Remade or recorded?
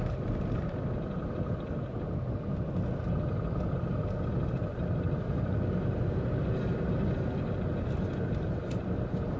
recorded